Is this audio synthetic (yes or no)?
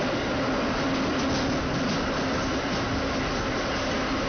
no